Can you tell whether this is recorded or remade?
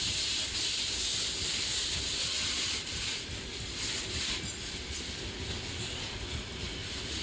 recorded